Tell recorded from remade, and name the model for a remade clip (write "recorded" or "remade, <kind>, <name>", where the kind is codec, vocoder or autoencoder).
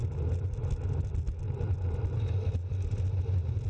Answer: recorded